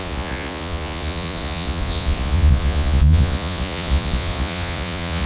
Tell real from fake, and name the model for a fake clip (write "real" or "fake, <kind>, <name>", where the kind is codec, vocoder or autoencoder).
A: fake, vocoder, Vocos